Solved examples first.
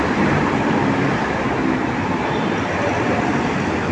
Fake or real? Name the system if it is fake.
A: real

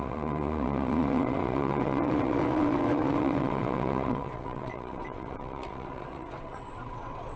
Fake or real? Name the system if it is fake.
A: fake, vocoder, WaveNeXt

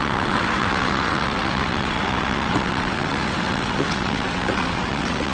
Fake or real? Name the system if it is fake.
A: fake, vocoder, WaveNeXt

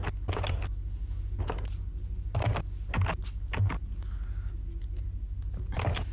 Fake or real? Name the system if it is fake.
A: real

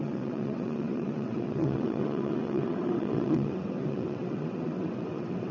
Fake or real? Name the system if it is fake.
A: fake, vocoder, WaveNeXt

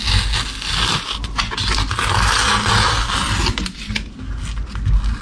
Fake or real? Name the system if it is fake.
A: real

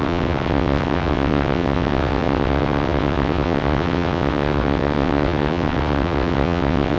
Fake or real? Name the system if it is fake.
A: fake, vocoder, WaveNeXt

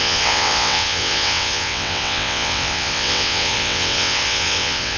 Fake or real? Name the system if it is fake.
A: fake, vocoder, WaveNeXt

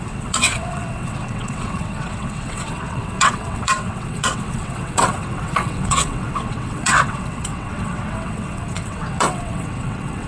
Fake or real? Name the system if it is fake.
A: fake, vocoder, WaveNeXt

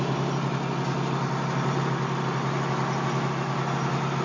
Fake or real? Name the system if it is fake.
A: real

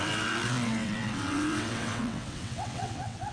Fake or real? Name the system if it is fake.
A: fake, vocoder, WaveNeXt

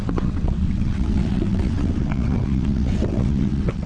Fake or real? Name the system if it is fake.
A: fake, vocoder, WaveNeXt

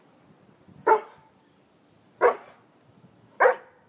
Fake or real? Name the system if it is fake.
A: real